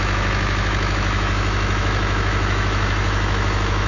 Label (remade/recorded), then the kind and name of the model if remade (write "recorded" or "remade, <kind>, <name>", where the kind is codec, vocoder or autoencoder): remade, autoencoder, DAC-VAE